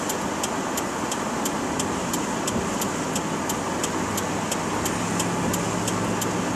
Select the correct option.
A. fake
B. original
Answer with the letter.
B